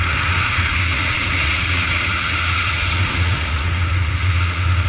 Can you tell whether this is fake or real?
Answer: fake